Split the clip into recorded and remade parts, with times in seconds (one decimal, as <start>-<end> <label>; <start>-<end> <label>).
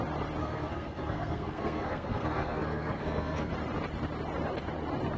0.0-0.4 recorded; 0.4-3.5 remade; 3.5-5.2 recorded